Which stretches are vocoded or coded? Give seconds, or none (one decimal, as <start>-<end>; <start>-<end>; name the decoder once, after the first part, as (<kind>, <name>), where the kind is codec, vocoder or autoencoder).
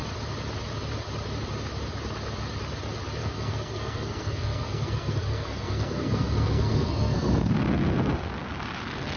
3.2-8.3 (codec, SNAC)